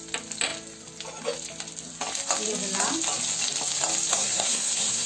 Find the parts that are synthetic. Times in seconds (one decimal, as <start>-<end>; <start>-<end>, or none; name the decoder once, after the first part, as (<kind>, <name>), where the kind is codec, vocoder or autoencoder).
4.1-5.1 (codec, SNAC)